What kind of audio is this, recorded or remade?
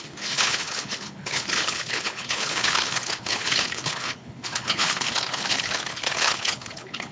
remade